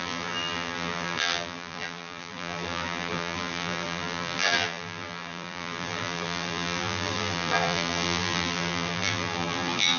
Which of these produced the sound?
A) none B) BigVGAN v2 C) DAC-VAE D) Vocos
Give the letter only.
B